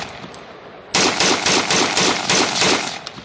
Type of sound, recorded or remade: recorded